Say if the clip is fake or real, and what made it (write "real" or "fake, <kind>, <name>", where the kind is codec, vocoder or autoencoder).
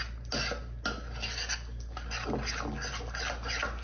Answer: real